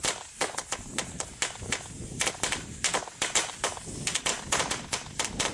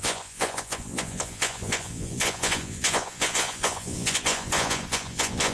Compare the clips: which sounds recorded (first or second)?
first